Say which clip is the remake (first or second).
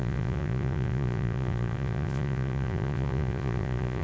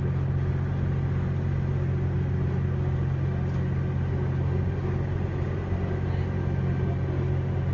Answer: first